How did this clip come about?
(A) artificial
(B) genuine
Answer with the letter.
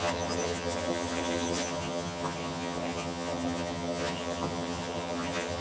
A